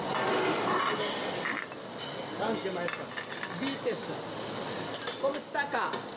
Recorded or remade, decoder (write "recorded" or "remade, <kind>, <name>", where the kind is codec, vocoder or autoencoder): recorded